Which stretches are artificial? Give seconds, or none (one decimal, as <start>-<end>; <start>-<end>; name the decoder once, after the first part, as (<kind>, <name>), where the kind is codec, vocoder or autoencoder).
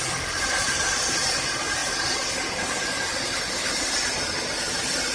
none